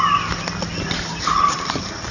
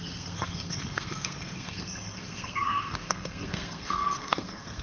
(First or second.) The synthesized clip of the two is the second